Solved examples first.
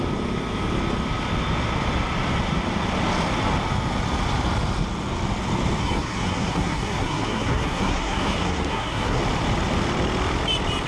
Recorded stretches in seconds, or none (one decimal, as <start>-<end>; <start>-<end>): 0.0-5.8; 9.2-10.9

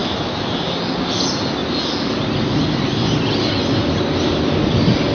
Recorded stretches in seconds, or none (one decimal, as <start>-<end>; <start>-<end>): 0.5-5.1

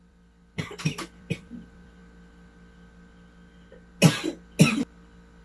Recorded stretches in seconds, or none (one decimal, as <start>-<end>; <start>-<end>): 2.0-5.4

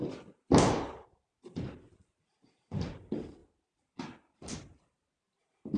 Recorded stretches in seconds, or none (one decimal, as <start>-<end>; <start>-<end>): 0.0-5.8

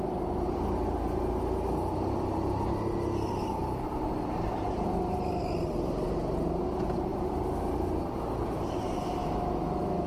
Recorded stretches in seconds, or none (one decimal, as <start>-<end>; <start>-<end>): 0.0-9.2

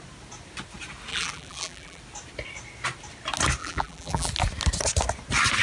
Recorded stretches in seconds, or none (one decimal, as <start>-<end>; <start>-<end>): 0.0-1.1; 2.0-3.6; 4.3-5.6